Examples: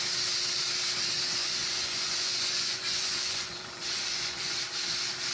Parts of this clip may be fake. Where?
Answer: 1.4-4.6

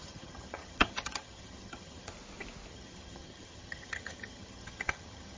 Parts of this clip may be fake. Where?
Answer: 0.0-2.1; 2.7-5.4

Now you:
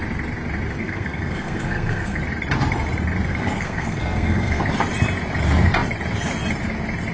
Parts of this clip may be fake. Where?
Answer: 0.8-2.2; 3.3-4.6